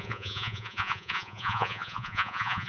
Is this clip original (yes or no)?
no